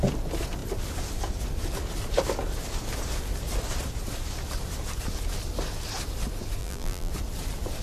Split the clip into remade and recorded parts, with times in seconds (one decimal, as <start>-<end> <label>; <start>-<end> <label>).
0.0-6.6 recorded; 6.6-7.1 remade; 7.1-7.8 recorded